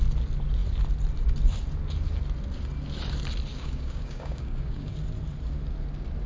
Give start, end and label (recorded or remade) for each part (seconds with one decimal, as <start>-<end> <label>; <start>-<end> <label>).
0.0-3.5 recorded; 3.5-4.9 remade; 4.9-6.3 recorded